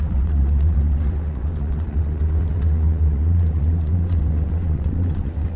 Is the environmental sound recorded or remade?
remade